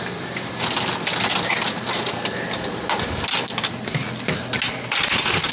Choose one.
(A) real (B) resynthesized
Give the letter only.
A